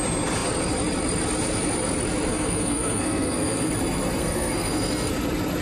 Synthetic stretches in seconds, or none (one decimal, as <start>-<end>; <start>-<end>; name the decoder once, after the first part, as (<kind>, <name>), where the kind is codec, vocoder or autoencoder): 2.3-3.7 (codec, SNAC); 4.2-5.1